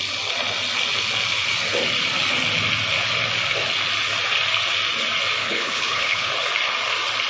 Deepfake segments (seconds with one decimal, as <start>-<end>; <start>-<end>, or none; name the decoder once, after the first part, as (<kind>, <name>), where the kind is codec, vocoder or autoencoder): 5.4-6.3 (codec, HILCodec)